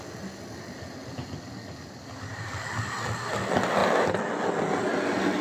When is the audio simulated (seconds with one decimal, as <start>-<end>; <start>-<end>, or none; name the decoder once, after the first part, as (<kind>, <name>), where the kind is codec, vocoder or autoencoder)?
none